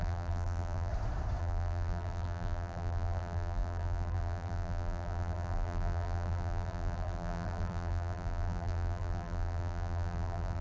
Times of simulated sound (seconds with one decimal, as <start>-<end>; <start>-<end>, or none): 0.0-0.9; 1.4-10.6